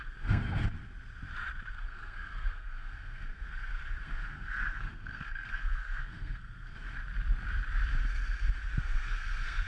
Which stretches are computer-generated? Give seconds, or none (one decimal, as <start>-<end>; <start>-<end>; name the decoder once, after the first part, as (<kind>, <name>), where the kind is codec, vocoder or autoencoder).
0.0-0.6 (codec, SNAC); 1.7-6.9; 8.8-9.7